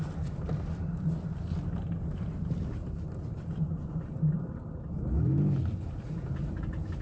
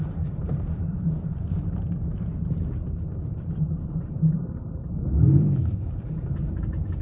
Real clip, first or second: first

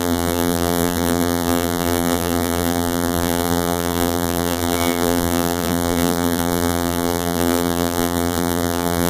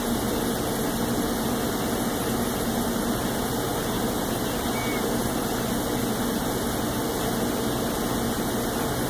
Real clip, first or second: second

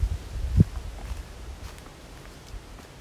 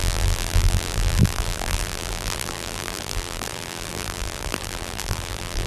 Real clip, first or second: first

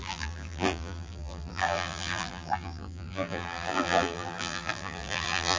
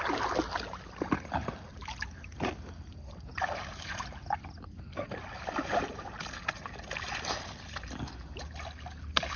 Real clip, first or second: second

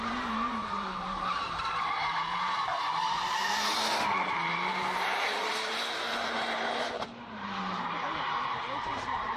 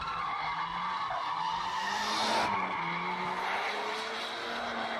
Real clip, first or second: second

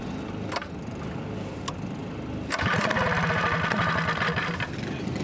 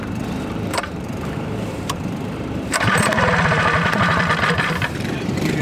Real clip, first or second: first